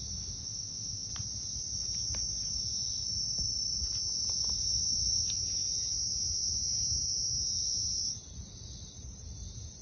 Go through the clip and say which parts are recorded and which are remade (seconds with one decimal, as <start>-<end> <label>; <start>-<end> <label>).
0.0-0.4 recorded; 0.4-1.1 remade; 1.1-9.8 recorded

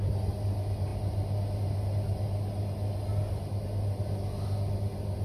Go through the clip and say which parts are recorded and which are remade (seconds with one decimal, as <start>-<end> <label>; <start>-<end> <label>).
0.0-5.2 recorded

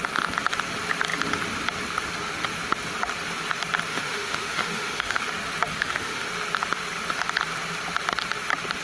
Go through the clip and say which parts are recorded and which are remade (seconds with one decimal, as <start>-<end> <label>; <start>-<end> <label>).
0.0-3.9 recorded; 3.9-5.3 remade; 5.3-5.7 recorded; 5.7-6.3 remade; 6.3-8.8 recorded

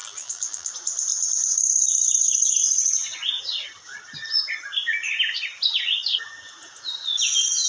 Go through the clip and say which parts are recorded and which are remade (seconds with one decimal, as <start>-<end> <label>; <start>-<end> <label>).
0.0-0.7 remade; 0.7-7.7 recorded

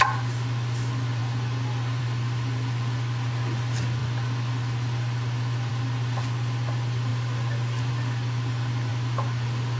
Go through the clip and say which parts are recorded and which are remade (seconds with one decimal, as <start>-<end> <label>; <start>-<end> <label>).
0.0-9.8 recorded

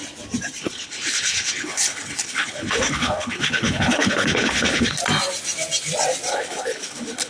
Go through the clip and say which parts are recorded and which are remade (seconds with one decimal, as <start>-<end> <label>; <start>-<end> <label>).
0.0-0.6 recorded; 0.6-5.0 remade; 5.0-6.3 recorded; 6.3-7.3 remade